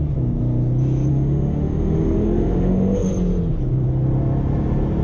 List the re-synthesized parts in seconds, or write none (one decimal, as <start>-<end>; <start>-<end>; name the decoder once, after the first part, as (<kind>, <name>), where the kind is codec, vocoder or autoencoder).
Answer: 1.1-3.1 (autoencoder, DAC-VAE)